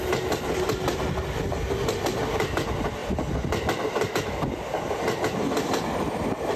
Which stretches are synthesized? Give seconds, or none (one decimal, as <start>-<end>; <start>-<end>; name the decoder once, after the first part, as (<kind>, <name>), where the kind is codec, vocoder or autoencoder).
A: none